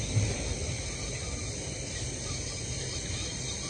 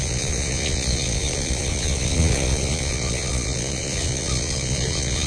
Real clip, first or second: first